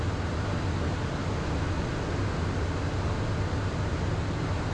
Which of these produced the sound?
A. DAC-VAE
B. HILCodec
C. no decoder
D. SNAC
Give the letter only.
C